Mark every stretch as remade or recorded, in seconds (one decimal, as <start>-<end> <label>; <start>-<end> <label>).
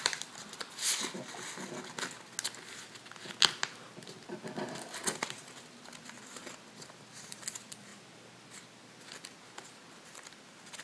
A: 0.0-10.8 recorded